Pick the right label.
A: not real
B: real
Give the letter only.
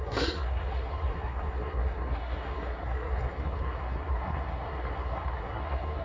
A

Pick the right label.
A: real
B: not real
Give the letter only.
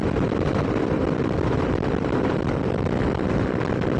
B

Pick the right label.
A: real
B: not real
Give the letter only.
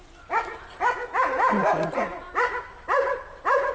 B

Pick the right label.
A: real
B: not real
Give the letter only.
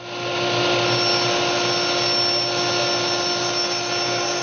A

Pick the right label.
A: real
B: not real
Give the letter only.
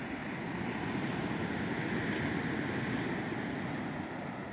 A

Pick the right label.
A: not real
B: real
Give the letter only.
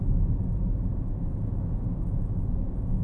A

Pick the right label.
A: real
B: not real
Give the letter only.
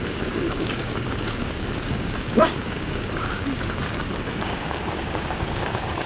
B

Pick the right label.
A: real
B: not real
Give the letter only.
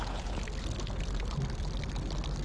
A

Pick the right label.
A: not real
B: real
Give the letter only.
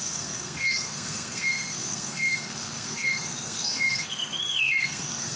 A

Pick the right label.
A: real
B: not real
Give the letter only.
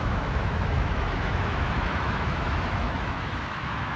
B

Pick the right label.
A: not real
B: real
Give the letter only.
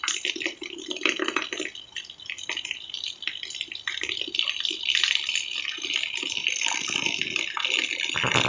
A